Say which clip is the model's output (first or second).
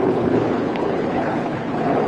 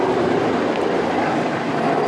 first